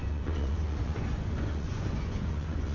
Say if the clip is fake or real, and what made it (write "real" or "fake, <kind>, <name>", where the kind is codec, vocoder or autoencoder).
fake, vocoder, Vocos